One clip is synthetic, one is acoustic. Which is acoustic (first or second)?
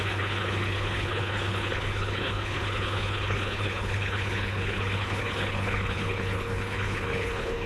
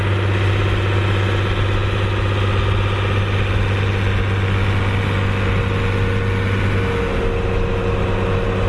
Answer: second